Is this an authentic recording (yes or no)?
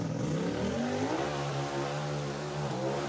yes